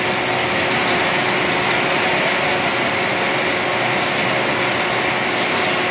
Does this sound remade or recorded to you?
recorded